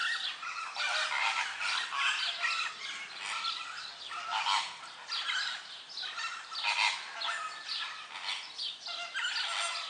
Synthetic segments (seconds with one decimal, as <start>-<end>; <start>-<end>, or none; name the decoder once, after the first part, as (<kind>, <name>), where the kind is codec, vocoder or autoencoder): none